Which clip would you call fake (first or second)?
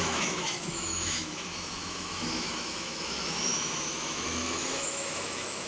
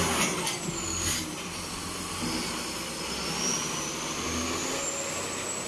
first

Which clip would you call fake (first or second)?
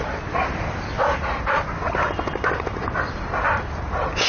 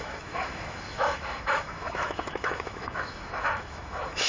second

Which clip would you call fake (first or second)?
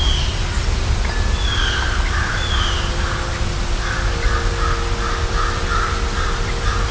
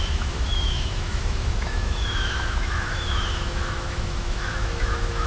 second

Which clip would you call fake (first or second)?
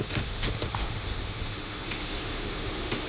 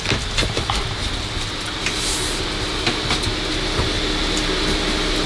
first